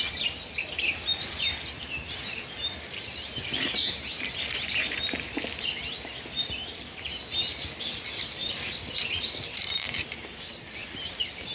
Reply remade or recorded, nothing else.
recorded